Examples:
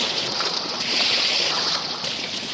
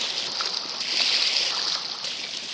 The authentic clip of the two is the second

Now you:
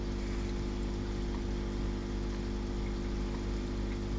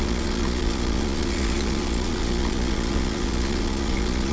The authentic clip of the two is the first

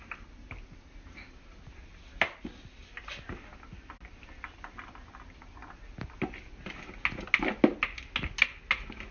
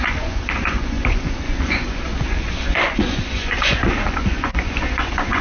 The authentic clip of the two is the first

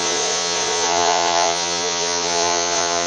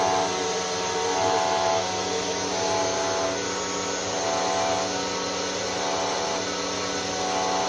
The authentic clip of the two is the second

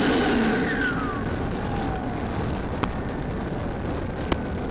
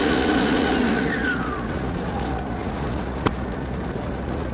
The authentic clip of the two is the first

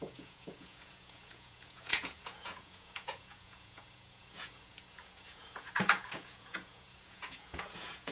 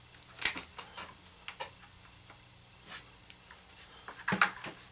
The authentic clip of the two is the second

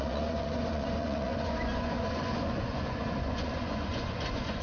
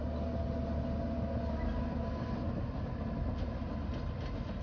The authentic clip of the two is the second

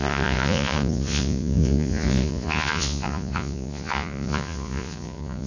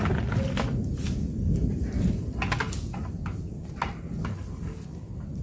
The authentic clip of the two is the second